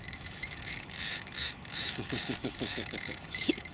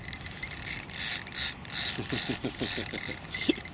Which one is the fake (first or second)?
first